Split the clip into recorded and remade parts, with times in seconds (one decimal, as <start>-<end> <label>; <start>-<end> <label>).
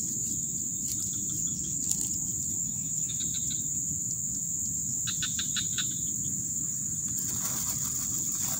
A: 0.0-1.4 recorded; 1.4-1.9 remade; 1.9-2.6 recorded; 2.6-3.2 remade; 3.2-8.6 recorded